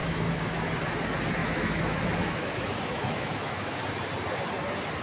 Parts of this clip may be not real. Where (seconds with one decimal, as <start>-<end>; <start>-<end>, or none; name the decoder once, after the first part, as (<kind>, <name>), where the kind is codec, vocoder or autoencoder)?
0.0-0.6 (autoencoder, DAC-VAE); 1.4-3.8